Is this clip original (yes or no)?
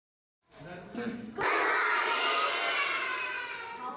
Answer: yes